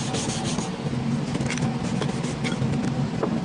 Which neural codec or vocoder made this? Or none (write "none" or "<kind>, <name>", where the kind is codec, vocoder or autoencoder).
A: none